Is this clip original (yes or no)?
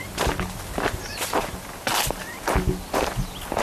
yes